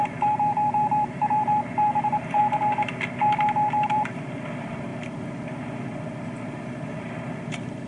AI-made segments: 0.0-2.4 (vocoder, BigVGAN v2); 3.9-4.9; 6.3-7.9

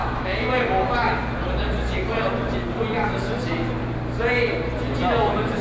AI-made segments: 0.0-0.5 (autoencoder, DAC-VAE)

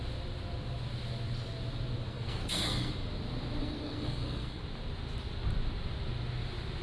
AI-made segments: 2.1-2.9 (codec, SNAC); 3.6-4.6

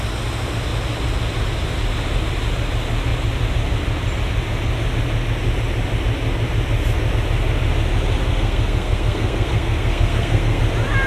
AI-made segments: 8.2-10.6 (codec, SNAC)

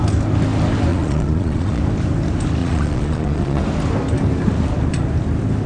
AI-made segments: 0.9-1.8 (vocoder, Vocos); 2.6-3.6

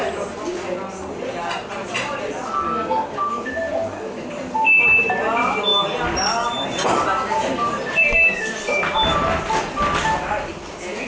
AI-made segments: none

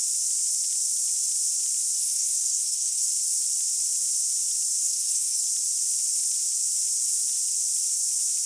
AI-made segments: 2.0-3.1 (codec, SNAC); 4.8-5.4